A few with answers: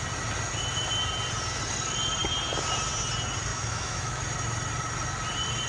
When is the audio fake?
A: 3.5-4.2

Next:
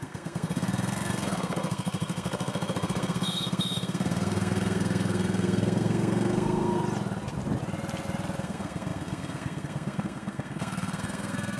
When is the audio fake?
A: 0.0-6.8; 8.4-11.6